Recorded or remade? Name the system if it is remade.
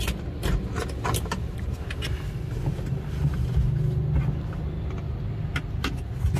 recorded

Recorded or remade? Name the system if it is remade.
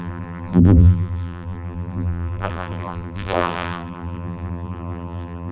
remade, vocoder, BigVGAN v2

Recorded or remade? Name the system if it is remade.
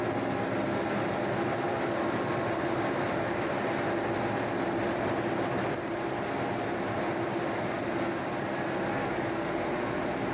recorded